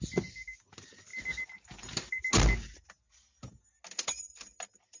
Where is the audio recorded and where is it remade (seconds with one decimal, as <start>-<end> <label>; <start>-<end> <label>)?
0.0-5.0 recorded